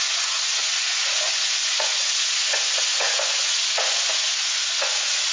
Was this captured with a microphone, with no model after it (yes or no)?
no